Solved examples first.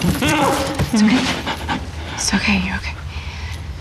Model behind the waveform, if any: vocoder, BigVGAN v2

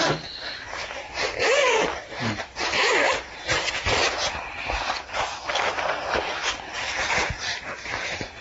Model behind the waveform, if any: vocoder, BigVGAN v2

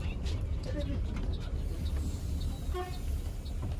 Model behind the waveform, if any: none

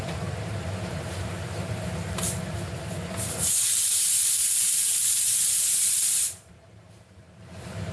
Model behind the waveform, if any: vocoder, BigVGAN v2